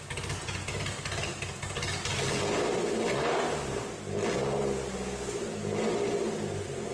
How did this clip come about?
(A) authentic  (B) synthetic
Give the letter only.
A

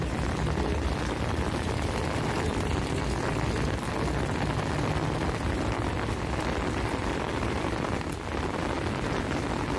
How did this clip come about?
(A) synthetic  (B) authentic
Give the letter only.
B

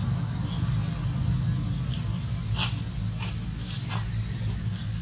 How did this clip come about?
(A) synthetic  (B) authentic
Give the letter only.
B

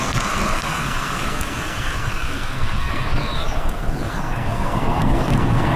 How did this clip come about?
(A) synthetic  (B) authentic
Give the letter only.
A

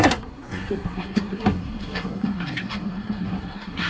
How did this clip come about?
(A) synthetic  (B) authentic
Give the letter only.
A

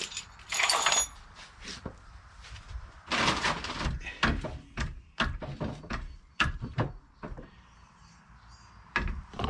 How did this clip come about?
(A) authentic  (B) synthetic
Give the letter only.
A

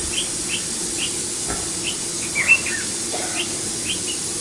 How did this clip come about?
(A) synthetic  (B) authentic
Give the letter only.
B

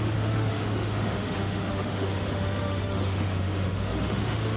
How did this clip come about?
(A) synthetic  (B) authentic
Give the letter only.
A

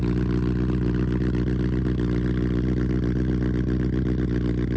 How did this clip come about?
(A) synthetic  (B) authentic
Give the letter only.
B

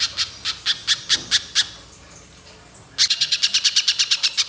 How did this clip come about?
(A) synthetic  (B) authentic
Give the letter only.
B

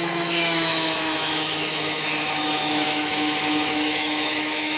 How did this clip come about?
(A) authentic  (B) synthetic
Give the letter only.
B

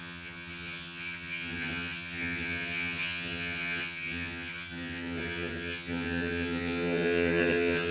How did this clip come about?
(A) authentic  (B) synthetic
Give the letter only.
B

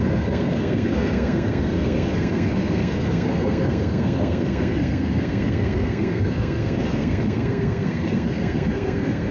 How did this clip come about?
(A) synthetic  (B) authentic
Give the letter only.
A